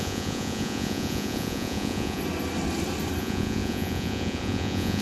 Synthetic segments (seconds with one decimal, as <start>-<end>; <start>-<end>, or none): 0.0-2.2; 3.2-5.0